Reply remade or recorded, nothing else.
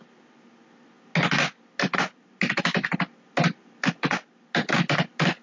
recorded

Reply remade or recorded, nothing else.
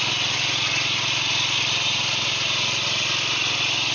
recorded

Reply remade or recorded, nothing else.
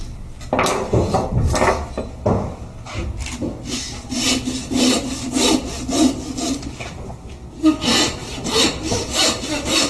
recorded